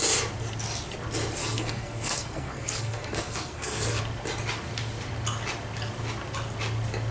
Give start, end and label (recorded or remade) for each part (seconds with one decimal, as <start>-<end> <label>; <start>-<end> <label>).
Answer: 0.0-1.4 recorded; 1.4-4.0 remade; 4.0-7.1 recorded